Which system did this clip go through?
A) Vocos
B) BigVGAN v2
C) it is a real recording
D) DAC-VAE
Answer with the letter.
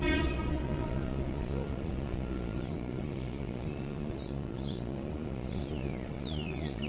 A